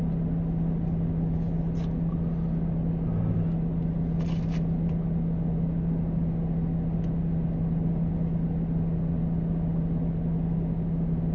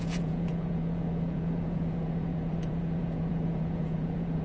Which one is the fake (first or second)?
second